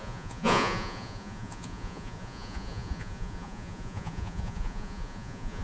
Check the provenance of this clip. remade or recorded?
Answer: remade